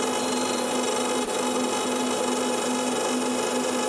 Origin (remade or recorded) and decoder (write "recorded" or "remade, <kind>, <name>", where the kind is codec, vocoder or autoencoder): recorded